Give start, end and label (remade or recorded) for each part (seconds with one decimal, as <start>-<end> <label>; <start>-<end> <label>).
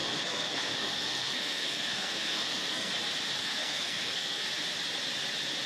0.0-2.9 remade; 2.9-3.4 recorded; 3.4-4.5 remade; 4.5-5.7 recorded